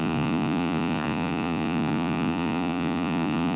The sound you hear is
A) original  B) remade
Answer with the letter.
B